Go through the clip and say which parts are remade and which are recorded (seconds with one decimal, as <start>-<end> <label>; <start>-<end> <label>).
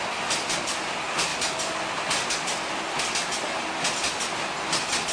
0.0-5.1 recorded